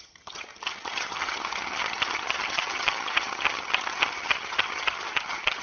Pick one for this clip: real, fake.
fake